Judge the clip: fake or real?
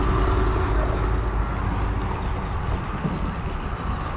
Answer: real